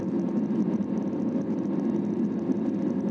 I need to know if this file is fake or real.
fake